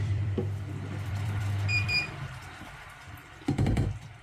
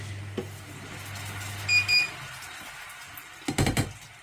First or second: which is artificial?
first